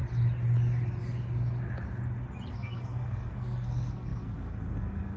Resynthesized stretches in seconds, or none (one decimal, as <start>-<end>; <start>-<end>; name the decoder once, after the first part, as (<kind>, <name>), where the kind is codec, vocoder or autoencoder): 2.5-5.2 (codec, SNAC)